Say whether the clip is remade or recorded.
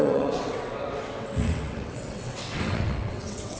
remade